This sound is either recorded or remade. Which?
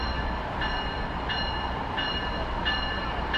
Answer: recorded